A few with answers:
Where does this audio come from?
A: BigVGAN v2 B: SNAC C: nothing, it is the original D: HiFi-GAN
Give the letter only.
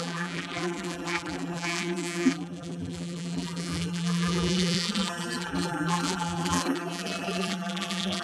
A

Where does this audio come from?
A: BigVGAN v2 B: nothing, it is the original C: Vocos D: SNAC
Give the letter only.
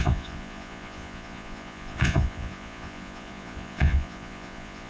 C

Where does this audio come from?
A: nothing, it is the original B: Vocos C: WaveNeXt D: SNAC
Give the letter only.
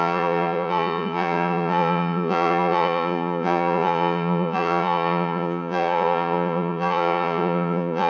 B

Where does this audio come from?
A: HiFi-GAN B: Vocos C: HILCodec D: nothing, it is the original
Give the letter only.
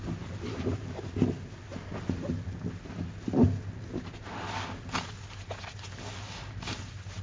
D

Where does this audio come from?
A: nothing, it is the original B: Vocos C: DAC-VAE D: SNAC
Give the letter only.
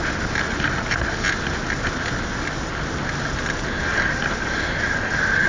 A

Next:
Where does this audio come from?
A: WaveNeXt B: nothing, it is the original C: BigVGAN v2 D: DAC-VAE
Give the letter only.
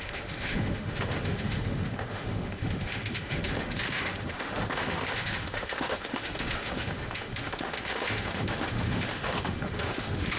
D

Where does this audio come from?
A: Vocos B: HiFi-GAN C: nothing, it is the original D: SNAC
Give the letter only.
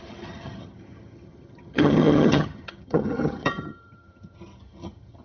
B